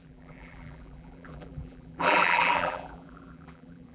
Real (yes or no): no